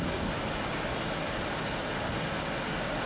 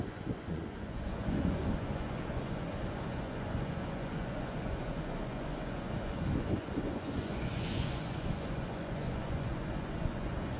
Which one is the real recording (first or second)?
first